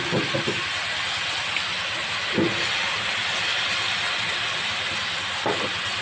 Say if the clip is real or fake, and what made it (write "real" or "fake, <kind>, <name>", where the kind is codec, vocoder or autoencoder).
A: real